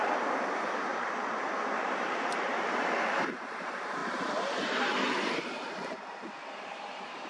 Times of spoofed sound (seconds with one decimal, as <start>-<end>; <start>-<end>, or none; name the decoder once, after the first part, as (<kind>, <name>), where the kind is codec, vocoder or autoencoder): 0.0-4.0 (vocoder, BigVGAN v2); 6.6-7.3